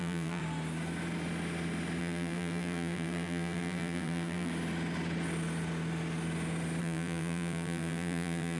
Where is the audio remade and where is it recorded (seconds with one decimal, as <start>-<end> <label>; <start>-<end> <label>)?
0.0-0.4 remade; 0.4-2.0 recorded; 2.0-4.5 remade; 4.5-6.8 recorded; 6.8-8.6 remade